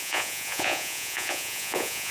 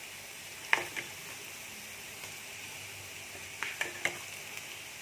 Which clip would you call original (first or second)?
second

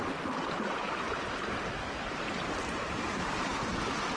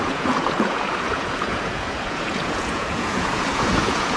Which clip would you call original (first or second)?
first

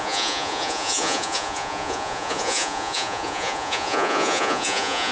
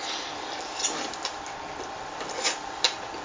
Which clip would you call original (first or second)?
second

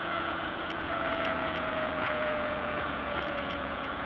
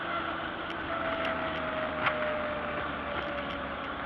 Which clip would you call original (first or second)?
second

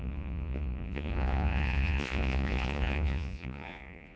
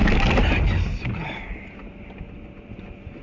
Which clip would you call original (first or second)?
second